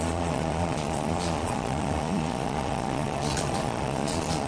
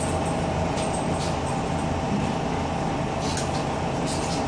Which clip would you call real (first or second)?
second